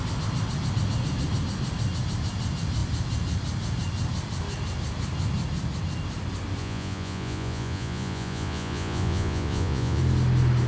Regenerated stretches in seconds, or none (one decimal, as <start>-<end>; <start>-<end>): 6.6-10.0